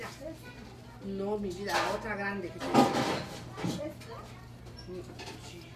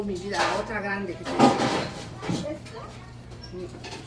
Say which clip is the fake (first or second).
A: second